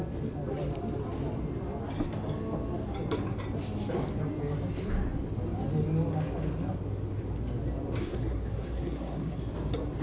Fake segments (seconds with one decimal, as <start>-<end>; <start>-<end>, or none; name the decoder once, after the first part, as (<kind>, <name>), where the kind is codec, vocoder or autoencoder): 8.0-9.4 (codec, SNAC)